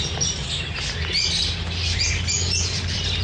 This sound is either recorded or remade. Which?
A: recorded